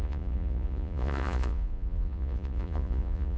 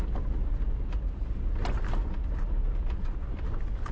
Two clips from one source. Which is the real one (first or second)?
second